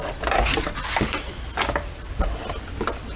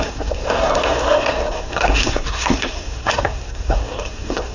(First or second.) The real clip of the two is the first